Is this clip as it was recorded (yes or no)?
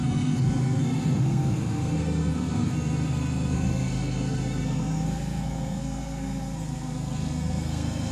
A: no